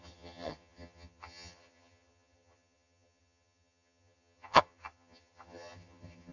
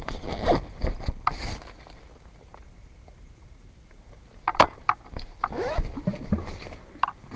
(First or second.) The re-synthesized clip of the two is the first